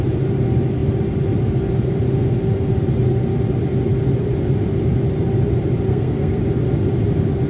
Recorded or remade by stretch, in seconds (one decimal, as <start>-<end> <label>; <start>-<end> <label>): 0.0-5.9 recorded; 5.9-6.4 remade; 6.4-7.5 recorded